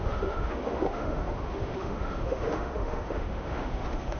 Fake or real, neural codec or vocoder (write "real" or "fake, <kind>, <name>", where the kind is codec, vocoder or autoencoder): fake, autoencoder, DAC-VAE